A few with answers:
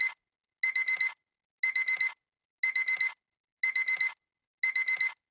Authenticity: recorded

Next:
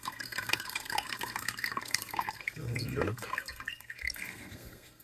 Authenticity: remade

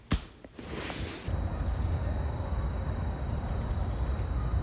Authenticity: recorded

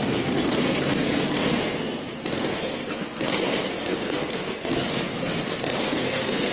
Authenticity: remade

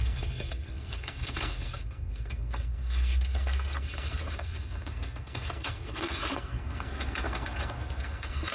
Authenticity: remade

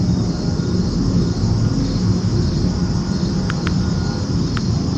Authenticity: recorded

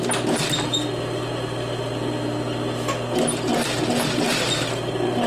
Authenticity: recorded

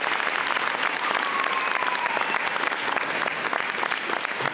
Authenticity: recorded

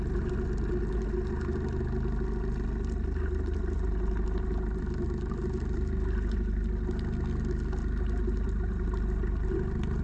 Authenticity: recorded